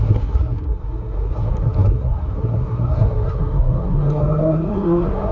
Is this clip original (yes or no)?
no